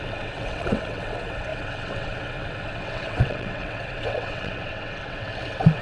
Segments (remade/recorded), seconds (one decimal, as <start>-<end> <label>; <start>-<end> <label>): 0.0-5.8 remade